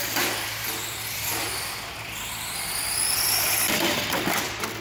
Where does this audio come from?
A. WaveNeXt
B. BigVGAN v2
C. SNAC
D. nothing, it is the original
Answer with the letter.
B